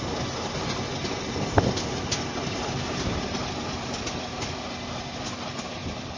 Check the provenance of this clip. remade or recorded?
recorded